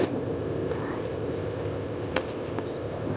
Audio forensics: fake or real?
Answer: fake